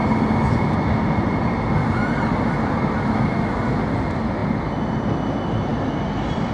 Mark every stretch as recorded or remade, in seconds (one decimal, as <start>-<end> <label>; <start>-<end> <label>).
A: 0.0-6.5 recorded